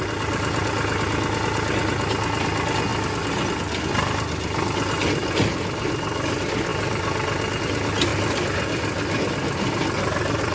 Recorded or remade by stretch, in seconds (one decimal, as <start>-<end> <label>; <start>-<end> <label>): 0.0-10.5 recorded